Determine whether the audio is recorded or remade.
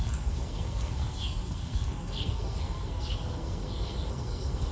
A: remade